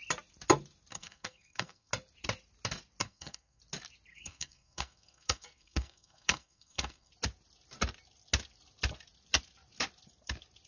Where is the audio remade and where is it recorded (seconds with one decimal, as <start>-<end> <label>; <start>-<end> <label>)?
0.0-0.9 recorded; 0.9-1.9 remade; 1.9-3.0 recorded; 3.0-3.6 remade; 3.6-4.1 recorded; 4.1-7.1 remade; 7.1-10.7 recorded